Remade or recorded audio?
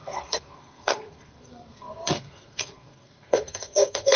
remade